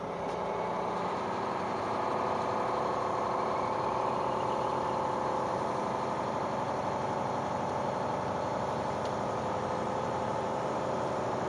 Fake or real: real